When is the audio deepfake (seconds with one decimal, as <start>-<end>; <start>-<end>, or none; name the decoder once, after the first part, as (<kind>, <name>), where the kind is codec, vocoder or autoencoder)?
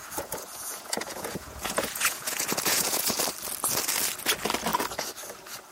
0.0-3.2 (vocoder, Vocos)